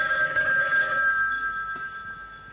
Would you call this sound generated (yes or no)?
yes